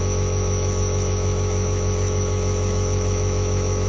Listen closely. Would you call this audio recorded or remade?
remade